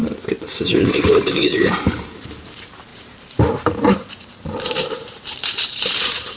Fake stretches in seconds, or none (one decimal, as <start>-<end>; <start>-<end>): 0.6-6.4

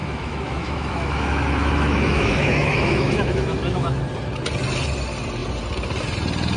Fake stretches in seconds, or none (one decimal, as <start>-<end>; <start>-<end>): 0.0-4.0

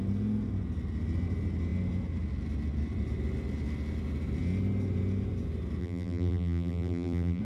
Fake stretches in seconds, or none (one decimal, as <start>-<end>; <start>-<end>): 5.8-7.4

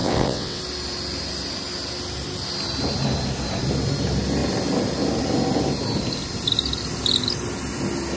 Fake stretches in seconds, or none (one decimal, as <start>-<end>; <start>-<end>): 0.0-0.6